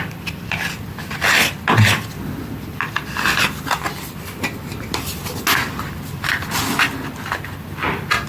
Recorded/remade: recorded